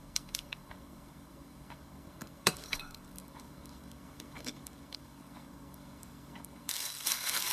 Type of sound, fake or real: fake